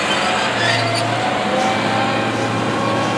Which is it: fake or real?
real